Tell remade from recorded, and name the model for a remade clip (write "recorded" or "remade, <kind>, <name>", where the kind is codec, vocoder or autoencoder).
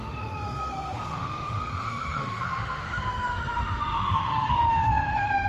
remade, autoencoder, DAC-VAE